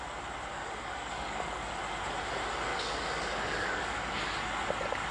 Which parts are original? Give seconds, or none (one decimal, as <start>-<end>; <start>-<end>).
0.0-0.5; 1.8-2.7; 4.3-5.1